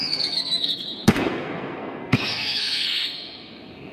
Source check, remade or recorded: remade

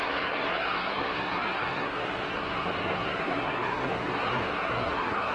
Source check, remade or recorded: remade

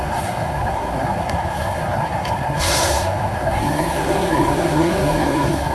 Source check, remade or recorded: remade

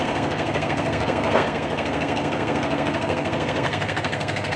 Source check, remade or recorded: remade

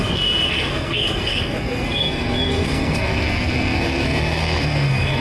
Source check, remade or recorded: remade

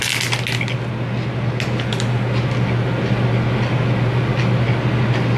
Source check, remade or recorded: recorded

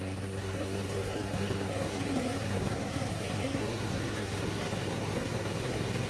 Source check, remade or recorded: remade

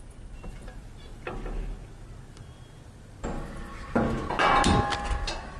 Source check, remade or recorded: recorded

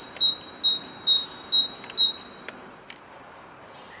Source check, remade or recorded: recorded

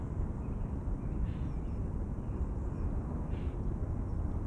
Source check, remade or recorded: recorded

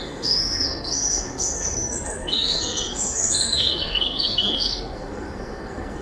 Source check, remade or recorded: remade